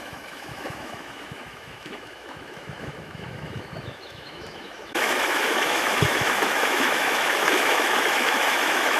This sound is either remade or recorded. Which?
remade